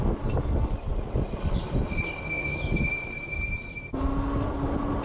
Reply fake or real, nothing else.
real